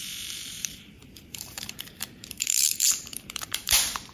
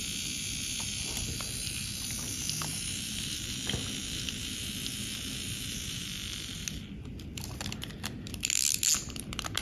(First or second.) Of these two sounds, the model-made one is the first